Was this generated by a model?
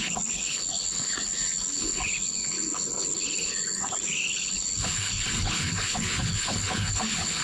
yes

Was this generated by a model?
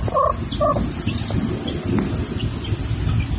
no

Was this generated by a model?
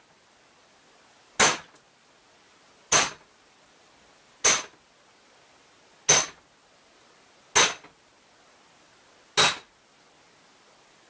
no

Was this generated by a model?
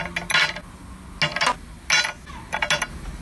no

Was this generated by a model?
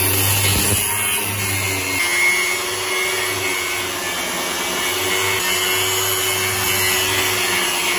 no